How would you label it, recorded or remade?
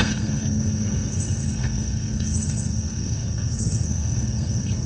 remade